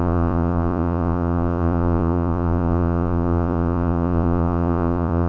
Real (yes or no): no